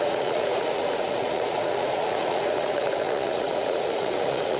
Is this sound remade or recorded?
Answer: remade